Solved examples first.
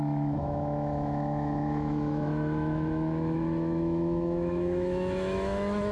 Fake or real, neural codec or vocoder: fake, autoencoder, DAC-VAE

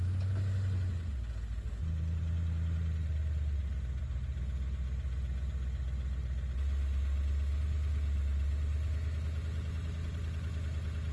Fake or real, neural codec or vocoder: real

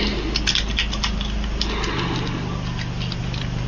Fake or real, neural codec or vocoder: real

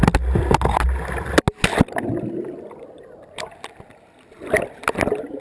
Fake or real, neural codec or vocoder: real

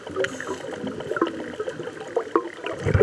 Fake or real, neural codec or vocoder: real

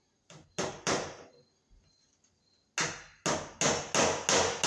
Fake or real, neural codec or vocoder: real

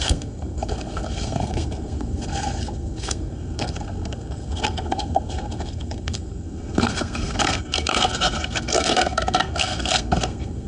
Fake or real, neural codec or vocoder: fake, codec, SNAC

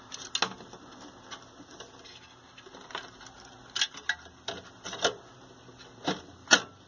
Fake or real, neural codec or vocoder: real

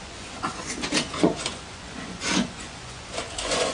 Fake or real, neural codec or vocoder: fake, vocoder, Vocos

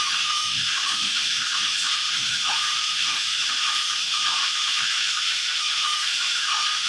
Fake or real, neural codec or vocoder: fake, autoencoder, DAC-VAE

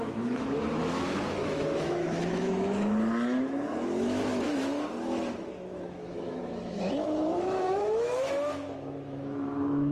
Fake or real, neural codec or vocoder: fake, autoencoder, DAC-VAE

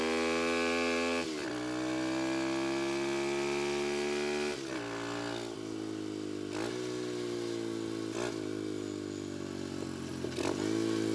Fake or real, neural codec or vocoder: real